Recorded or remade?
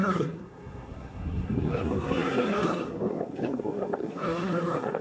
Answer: remade